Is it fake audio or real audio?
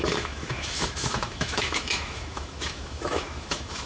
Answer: fake